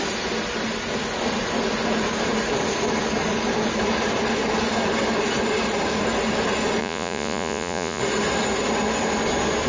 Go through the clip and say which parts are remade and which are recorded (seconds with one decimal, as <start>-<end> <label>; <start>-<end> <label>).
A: 0.0-6.8 recorded; 6.8-8.0 remade; 8.0-9.7 recorded